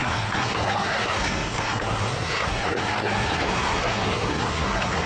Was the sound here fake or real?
fake